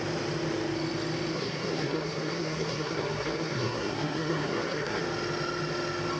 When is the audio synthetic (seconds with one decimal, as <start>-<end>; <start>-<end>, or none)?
1.3-5.0